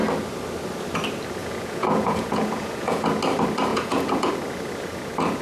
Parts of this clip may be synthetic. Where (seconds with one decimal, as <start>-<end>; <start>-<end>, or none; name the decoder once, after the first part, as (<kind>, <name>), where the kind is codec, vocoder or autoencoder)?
1.4-3.2 (vocoder, Vocos); 3.7-4.3